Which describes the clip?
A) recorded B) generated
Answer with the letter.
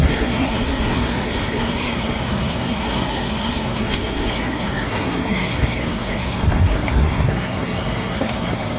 B